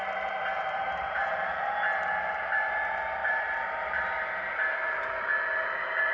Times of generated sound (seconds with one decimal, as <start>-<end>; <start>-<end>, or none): 0.5-1.6; 3.2-4.2; 4.7-5.3